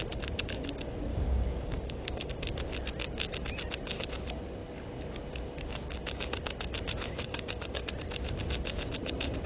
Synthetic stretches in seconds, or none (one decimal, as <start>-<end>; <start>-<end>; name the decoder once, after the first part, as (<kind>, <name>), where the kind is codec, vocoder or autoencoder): 1.1-2.3 (codec, DAC); 7.1-7.9